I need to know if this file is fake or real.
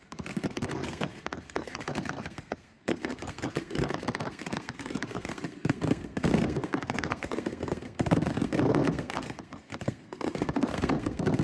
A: fake